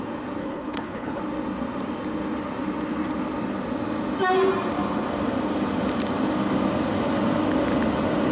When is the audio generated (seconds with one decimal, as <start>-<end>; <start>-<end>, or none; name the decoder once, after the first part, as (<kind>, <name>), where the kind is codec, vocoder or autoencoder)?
0.4-1.2 (codec, HILCodec)